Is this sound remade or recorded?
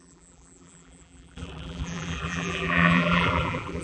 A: remade